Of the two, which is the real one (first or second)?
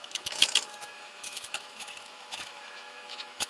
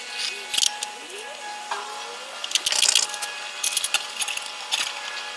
second